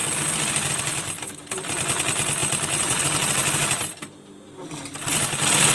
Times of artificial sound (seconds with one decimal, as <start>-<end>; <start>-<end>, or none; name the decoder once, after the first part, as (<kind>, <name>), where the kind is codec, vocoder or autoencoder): 2.4-3.0 (vocoder, BigVGAN v2); 3.4-4.0